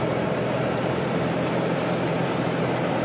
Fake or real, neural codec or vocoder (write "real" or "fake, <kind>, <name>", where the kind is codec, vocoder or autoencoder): fake, vocoder, BigVGAN v2